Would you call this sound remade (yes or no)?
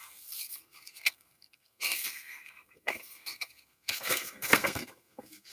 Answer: yes